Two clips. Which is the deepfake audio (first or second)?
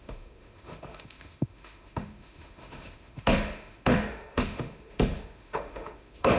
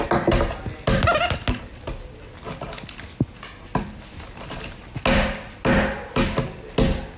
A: first